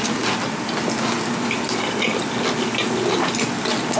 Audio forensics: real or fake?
real